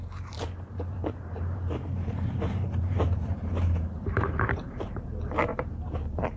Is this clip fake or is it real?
fake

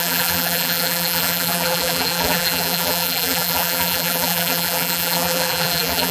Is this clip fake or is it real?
fake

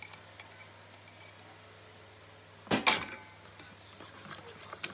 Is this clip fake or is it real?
real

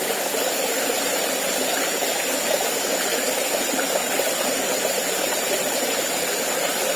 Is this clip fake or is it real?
real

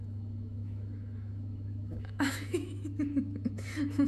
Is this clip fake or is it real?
fake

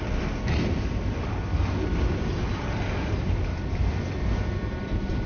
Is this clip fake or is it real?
real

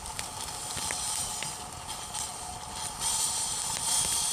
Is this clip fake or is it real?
real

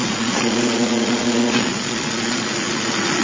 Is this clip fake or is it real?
fake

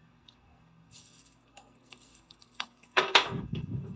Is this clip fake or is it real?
fake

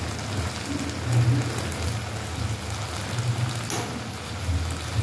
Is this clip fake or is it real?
real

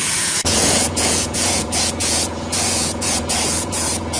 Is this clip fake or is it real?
fake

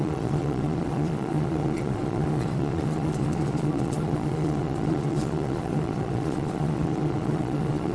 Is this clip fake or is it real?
fake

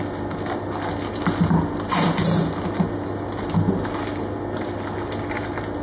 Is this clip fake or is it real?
real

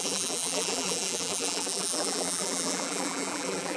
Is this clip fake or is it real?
fake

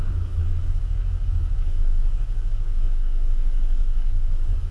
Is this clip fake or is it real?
fake